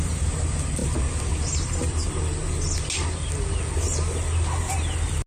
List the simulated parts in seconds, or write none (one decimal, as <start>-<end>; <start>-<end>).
none